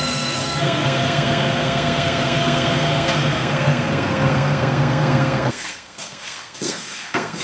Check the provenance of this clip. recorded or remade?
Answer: remade